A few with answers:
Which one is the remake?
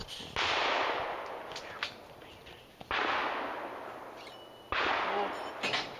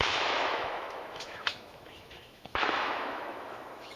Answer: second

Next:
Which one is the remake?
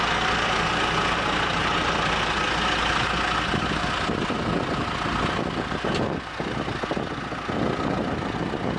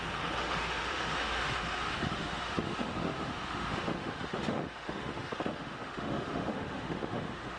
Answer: second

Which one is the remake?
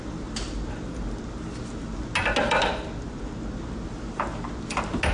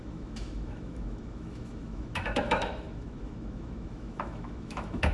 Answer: second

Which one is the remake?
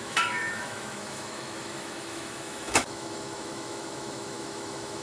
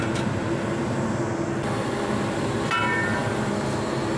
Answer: first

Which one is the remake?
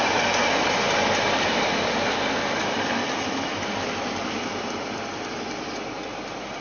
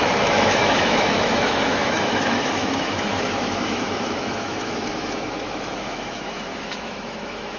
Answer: second